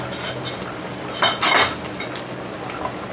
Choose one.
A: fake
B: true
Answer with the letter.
B